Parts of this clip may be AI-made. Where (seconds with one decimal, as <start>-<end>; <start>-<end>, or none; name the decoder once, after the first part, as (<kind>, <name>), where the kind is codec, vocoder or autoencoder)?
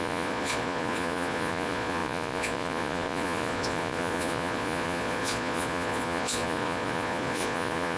0.0-8.0 (vocoder, Vocos)